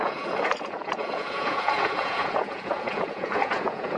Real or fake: fake